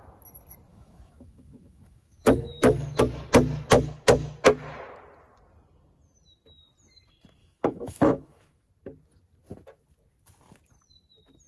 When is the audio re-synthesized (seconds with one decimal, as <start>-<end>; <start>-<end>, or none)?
0.7-3.0; 7.4-8.7